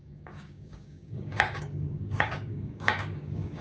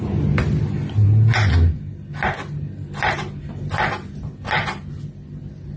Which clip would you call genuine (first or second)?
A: second